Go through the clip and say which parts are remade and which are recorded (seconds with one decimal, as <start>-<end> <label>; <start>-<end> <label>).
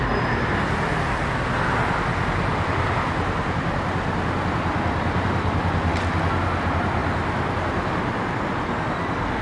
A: 0.0-9.4 recorded